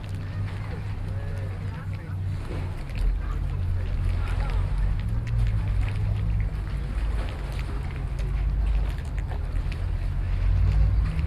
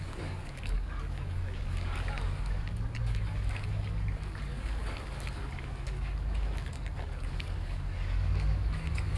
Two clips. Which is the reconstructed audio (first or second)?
second